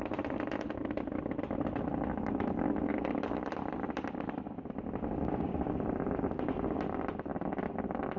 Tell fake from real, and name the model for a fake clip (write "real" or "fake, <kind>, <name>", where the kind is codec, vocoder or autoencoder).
fake, vocoder, BigVGAN v2